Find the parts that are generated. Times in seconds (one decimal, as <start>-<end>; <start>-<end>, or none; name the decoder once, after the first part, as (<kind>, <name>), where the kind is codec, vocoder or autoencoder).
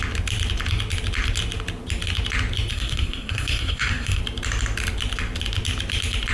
2.7-4.2 (codec, SNAC)